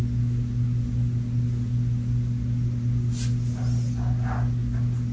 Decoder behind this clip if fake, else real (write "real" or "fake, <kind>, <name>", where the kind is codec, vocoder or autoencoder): real